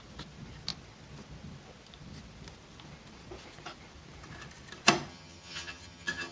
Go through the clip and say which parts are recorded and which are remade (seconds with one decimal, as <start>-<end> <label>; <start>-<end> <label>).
0.0-5.1 recorded; 5.1-6.3 remade